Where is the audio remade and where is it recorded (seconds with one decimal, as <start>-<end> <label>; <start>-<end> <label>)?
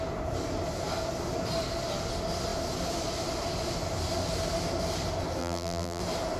0.0-5.4 recorded; 5.4-6.0 remade; 6.0-6.4 recorded